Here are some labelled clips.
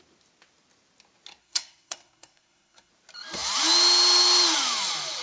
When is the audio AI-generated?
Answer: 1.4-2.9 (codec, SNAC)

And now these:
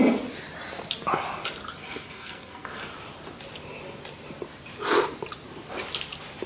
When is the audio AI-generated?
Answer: 1.8-2.8 (codec, SNAC)

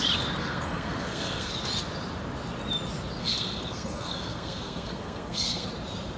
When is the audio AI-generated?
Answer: 0.4-1.5 (codec, SNAC); 3.2-5.7

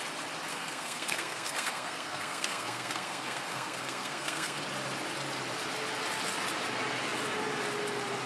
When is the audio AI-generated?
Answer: 0.5-4.6 (codec, SNAC)

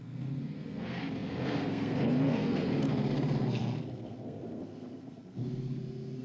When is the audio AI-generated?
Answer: 0.0-6.2 (codec, SNAC)

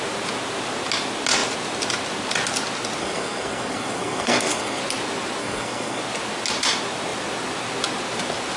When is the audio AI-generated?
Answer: 3.0-4.8 (codec, SNAC); 5.4-6.0

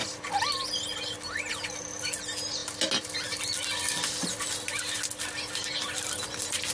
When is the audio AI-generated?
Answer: none